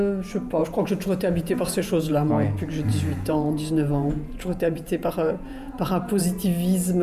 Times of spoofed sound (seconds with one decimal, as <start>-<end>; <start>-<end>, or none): 0.6-2.3; 2.9-6.2